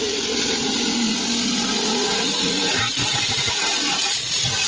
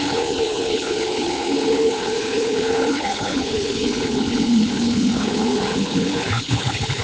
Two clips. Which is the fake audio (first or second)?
second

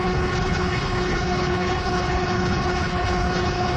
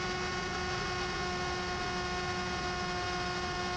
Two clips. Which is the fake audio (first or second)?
first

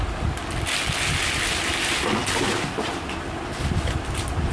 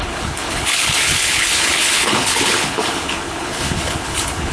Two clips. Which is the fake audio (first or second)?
second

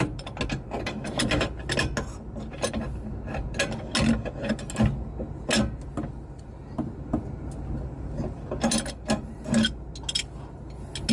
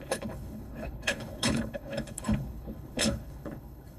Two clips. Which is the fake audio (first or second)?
second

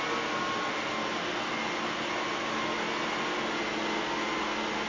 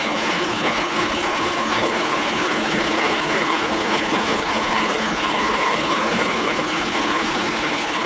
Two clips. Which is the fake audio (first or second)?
second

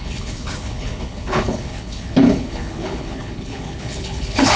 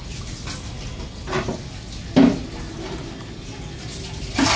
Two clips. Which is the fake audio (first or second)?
first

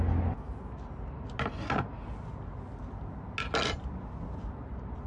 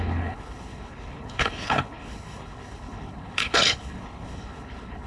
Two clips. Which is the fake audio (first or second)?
second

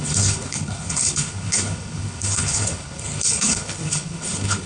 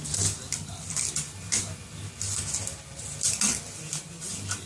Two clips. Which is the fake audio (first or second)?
first